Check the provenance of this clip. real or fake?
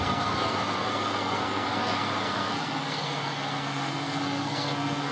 fake